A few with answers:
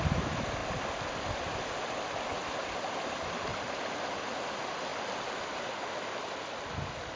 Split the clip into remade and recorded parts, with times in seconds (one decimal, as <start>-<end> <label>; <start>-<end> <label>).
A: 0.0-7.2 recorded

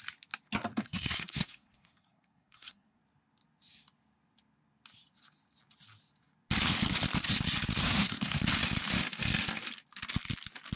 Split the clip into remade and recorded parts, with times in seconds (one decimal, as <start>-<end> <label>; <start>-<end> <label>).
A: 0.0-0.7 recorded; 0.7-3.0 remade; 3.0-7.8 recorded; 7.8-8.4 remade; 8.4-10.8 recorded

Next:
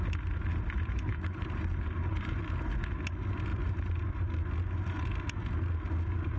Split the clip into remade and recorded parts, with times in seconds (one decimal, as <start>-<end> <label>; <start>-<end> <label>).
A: 0.0-0.5 recorded; 0.5-2.4 remade; 2.4-3.5 recorded; 3.5-4.3 remade; 4.3-6.4 recorded

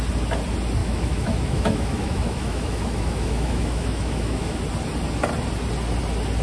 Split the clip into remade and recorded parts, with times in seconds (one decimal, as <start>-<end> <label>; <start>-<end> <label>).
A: 0.0-0.8 recorded; 0.8-4.6 remade; 4.6-6.4 recorded